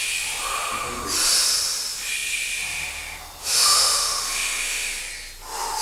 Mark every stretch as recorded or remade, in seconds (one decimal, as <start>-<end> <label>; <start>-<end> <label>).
0.0-3.4 recorded; 3.4-5.0 remade; 5.0-5.8 recorded